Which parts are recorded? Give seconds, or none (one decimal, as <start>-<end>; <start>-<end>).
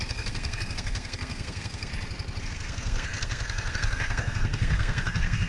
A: 1.9-2.4